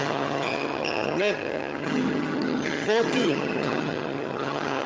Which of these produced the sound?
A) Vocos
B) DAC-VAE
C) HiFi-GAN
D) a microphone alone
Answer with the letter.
C